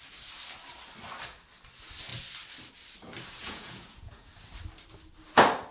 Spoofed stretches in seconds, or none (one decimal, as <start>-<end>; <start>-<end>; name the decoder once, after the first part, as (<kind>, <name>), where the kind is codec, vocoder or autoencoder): 3.4-4.3 (vocoder, Vocos)